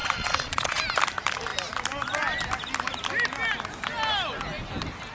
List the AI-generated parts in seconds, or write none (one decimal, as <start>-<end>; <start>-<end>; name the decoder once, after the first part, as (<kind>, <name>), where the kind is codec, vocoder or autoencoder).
0.0-0.8 (vocoder, Vocos)